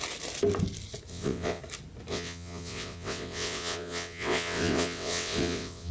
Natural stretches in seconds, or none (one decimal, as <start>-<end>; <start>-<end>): 0.0-1.1; 1.6-2.1